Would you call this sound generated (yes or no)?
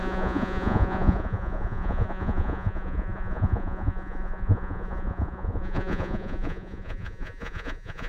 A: yes